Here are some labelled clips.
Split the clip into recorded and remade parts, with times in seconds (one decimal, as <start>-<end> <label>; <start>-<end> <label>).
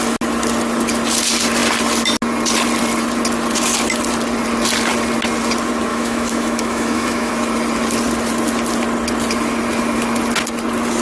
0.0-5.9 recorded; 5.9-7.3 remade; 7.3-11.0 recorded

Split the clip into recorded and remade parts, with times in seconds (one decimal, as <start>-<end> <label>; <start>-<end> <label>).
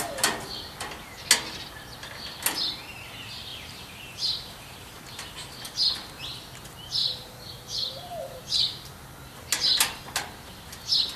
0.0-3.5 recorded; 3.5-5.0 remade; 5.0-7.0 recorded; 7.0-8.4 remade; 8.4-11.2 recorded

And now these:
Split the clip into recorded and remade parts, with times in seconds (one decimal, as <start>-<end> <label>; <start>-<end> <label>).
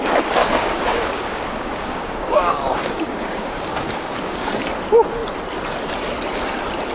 0.0-0.4 recorded; 0.4-4.5 remade; 4.5-6.9 recorded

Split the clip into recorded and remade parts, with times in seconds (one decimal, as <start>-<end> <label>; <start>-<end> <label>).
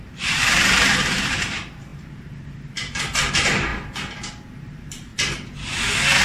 0.0-3.7 remade; 3.7-4.5 recorded; 4.5-5.1 remade; 5.1-6.2 recorded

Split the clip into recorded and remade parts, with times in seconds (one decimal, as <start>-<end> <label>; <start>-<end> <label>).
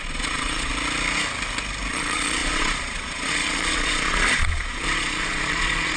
0.0-0.7 remade; 0.7-1.9 recorded; 1.9-6.0 remade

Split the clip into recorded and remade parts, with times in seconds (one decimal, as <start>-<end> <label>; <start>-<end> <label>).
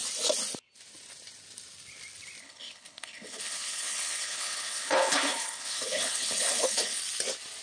0.0-2.4 recorded; 2.4-7.0 remade; 7.0-7.6 recorded